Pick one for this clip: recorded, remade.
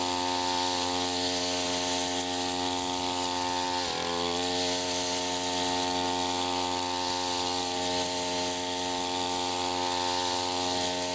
recorded